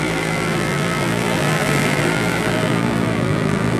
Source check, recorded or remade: remade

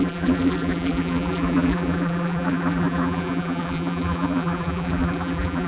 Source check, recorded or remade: remade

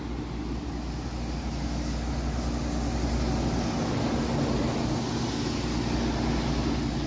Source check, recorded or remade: recorded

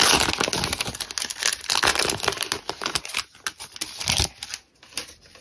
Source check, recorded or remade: recorded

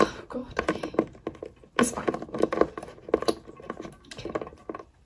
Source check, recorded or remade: recorded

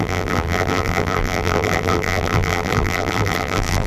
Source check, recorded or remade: remade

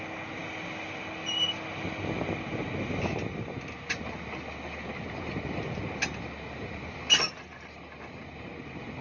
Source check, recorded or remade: recorded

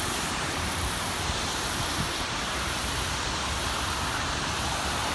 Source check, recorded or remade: remade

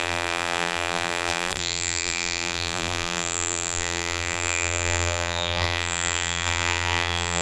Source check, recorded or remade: remade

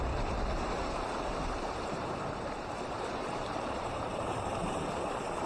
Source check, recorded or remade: remade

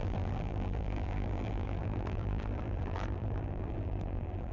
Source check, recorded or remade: remade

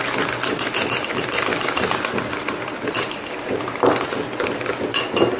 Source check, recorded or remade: recorded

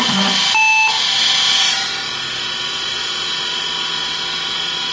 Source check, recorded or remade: recorded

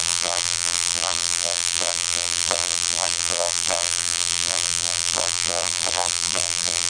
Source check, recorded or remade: remade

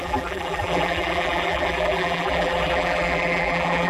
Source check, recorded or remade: remade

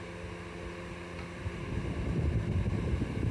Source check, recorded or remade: recorded